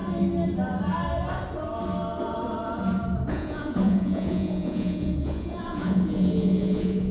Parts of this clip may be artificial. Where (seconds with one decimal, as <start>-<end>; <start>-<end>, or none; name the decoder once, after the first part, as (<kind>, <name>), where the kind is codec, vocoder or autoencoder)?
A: 3.3-7.1 (vocoder, Vocos)